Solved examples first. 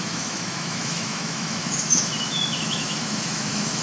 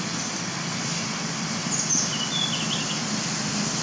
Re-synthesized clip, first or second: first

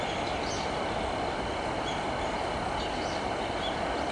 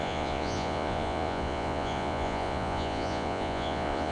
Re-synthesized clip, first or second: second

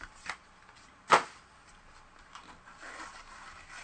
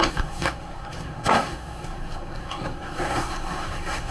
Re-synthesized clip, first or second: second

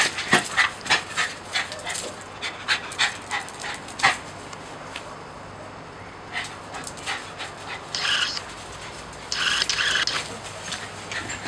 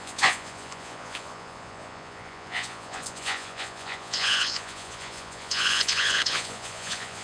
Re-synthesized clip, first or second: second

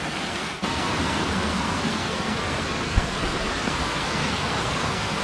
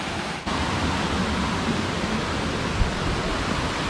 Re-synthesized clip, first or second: first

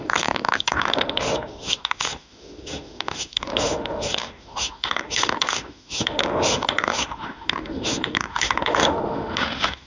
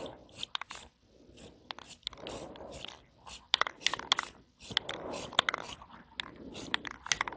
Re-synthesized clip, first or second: first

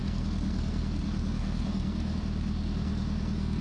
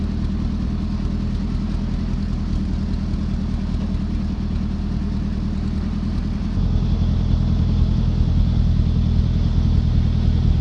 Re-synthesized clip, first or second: first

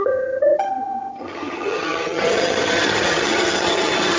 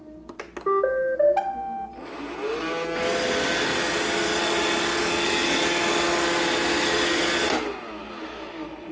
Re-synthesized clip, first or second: first